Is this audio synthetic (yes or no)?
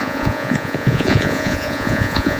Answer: yes